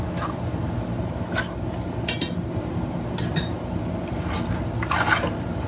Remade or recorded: recorded